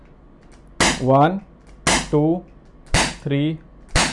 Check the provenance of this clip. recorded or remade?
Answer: recorded